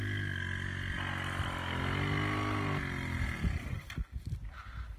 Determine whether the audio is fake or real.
real